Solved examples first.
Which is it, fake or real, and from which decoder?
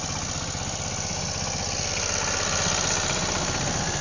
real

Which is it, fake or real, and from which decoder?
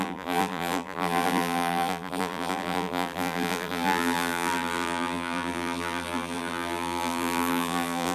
fake, vocoder, BigVGAN v2